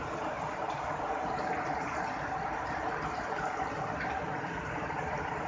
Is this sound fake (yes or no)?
no